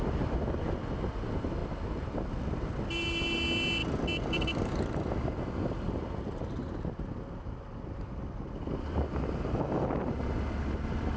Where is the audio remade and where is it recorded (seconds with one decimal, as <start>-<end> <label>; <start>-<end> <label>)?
0.0-11.2 recorded